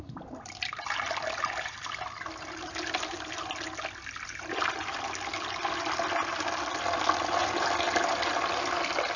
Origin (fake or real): real